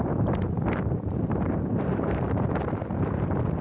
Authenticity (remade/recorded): remade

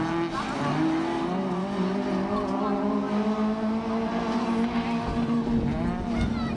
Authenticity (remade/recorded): recorded